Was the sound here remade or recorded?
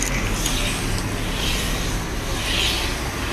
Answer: recorded